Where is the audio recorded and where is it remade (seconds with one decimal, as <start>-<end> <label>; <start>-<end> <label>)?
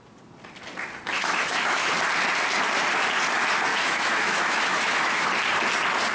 0.0-1.1 recorded; 1.1-1.9 remade; 1.9-3.7 recorded; 3.7-5.2 remade; 5.2-6.1 recorded